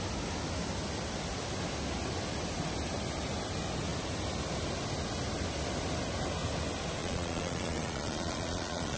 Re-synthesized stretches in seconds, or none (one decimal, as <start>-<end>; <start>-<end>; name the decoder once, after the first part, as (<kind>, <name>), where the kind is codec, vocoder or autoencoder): 7.0-9.0 (vocoder, Vocos)